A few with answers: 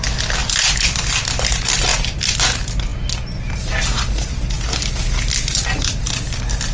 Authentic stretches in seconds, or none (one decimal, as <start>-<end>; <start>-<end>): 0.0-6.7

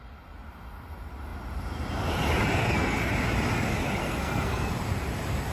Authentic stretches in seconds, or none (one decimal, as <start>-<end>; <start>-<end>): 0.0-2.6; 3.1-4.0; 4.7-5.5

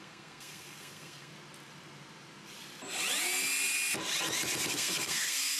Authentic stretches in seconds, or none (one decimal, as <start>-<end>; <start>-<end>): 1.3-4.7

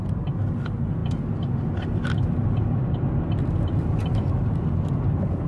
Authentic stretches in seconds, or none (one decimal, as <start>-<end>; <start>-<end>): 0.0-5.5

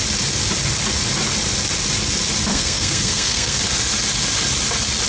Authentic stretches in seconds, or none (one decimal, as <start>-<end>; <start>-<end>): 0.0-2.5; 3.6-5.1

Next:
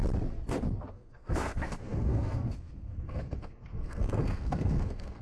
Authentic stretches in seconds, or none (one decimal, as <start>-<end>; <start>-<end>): 0.0-0.9

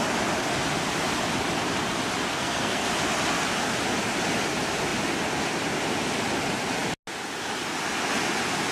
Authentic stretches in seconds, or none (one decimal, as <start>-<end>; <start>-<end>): 0.0-2.3; 2.9-8.7